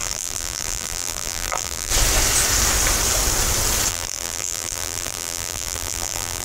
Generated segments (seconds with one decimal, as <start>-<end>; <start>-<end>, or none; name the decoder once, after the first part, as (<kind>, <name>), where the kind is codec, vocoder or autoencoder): 0.0-1.9 (vocoder, BigVGAN v2); 3.9-6.4